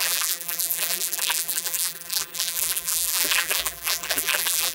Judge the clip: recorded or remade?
remade